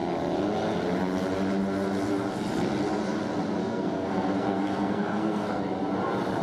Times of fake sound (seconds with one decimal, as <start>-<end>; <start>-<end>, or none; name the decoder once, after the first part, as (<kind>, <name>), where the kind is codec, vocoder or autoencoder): 3.6-5.6 (codec, SNAC)